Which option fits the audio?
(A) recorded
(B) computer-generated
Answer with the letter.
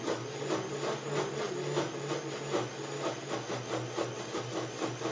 A